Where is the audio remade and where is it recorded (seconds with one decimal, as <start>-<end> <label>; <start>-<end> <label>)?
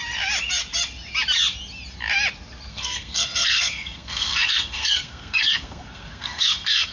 0.0-2.7 recorded; 2.7-6.9 remade